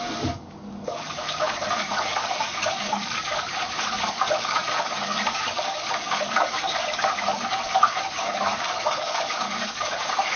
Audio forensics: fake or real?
fake